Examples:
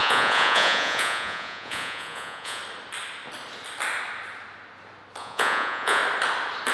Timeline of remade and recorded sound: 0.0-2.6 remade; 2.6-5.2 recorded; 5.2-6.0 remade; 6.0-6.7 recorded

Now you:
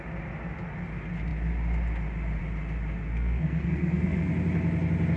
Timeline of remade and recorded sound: 0.0-3.1 recorded; 3.1-4.3 remade; 4.3-5.2 recorded

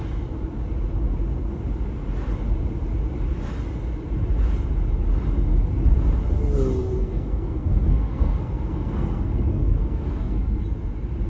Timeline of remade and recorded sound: 0.0-6.8 recorded; 6.8-10.6 remade; 10.6-11.3 recorded